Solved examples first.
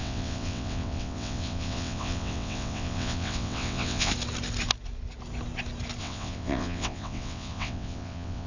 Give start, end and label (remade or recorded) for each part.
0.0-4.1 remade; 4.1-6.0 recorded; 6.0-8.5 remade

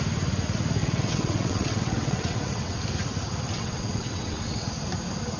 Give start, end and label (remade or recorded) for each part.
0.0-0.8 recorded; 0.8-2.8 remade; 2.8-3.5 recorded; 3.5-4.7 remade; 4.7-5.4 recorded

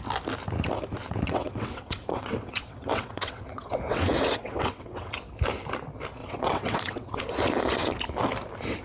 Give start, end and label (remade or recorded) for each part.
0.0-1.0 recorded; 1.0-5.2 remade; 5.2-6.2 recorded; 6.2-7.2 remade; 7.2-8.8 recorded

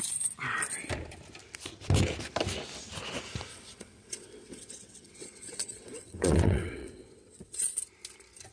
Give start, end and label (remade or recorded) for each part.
0.0-3.5 recorded; 3.5-7.6 remade; 7.6-8.5 recorded

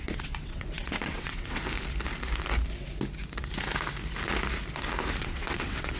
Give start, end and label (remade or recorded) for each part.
0.0-1.6 remade; 1.6-5.2 recorded; 5.2-6.0 remade

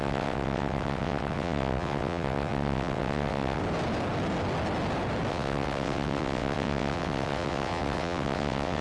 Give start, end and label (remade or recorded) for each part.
0.0-3.6 remade; 3.6-5.3 recorded; 5.3-8.8 remade